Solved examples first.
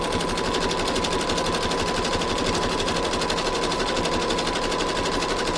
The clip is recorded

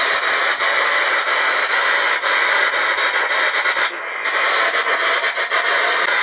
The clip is recorded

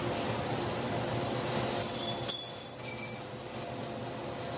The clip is recorded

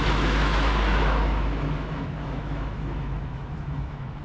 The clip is remade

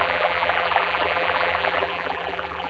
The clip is remade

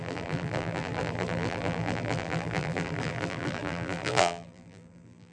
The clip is remade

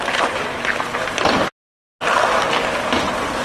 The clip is recorded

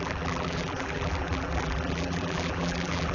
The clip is remade